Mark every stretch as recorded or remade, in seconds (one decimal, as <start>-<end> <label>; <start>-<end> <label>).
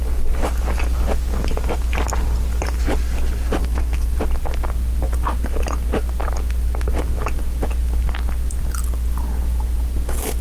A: 0.0-3.6 recorded; 3.6-4.2 remade; 4.2-10.4 recorded